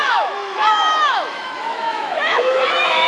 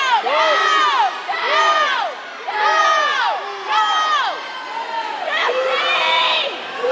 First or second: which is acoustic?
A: second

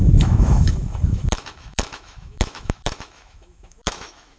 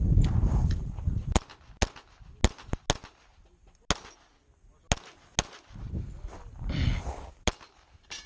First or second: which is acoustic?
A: second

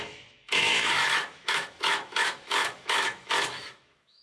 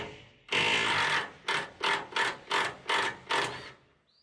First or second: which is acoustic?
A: second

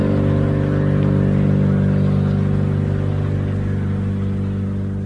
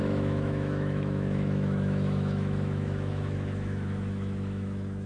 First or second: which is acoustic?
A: first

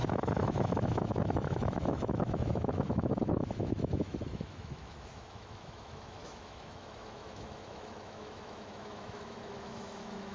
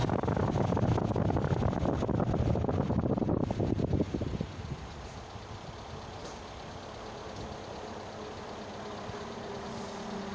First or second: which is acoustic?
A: second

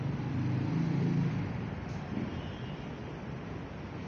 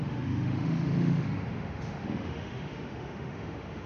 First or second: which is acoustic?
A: first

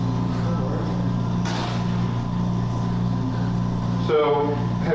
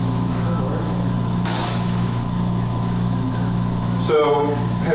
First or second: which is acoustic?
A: first